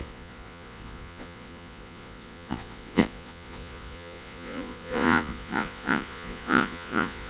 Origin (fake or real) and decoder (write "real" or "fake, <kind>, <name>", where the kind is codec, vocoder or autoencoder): fake, vocoder, Vocos